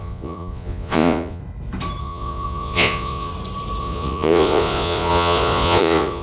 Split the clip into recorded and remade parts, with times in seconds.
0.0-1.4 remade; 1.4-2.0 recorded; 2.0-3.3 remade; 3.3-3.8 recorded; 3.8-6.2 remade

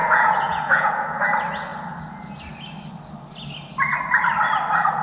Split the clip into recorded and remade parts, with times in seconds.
0.0-1.2 remade; 1.2-5.0 recorded

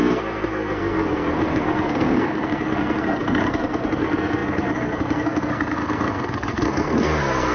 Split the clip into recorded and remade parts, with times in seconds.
0.0-7.5 remade

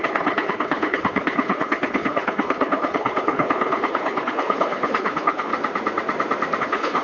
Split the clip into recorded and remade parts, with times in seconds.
0.0-5.5 remade; 5.5-6.6 recorded; 6.6-7.0 remade

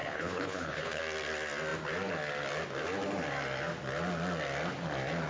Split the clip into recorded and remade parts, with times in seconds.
0.0-1.0 remade; 1.0-5.3 recorded

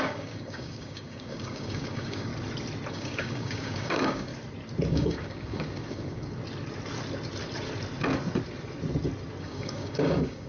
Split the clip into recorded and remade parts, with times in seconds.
0.0-2.3 remade; 2.3-2.9 recorded; 2.9-4.3 remade; 4.3-4.9 recorded; 4.9-6.4 remade; 6.4-9.4 recorded; 9.4-10.5 remade